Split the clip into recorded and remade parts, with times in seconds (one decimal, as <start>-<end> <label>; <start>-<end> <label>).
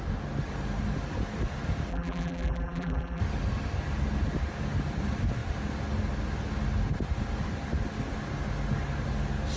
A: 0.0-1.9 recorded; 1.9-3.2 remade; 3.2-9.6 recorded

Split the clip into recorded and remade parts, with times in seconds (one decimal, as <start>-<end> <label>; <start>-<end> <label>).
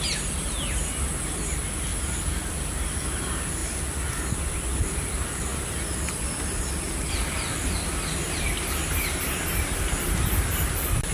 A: 0.0-1.9 recorded; 1.9-2.9 remade; 2.9-5.5 recorded; 5.5-8.4 remade; 8.4-11.1 recorded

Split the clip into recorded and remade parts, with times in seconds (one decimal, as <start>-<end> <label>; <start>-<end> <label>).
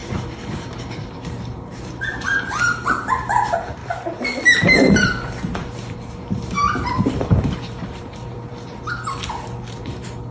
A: 0.0-3.8 remade; 3.8-4.6 recorded; 4.6-8.5 remade; 8.5-9.7 recorded; 9.7-10.3 remade